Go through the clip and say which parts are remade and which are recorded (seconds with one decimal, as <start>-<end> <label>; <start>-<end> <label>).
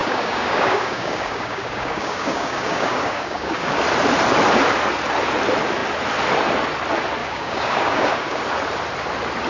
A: 0.0-3.8 remade; 3.8-7.2 recorded; 7.2-8.4 remade; 8.4-9.5 recorded